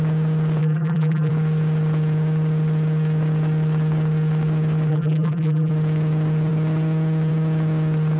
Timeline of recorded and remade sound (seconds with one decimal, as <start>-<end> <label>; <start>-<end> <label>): 0.0-0.6 recorded; 0.6-1.3 remade; 1.3-4.9 recorded; 4.9-5.7 remade; 5.7-8.2 recorded